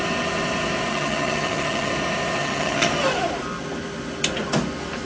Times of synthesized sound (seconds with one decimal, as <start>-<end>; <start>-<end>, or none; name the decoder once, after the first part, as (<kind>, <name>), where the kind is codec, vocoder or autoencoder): 0.9-1.9 (vocoder, HiFi-GAN); 2.4-2.9